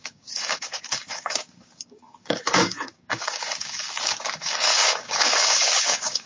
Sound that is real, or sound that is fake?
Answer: fake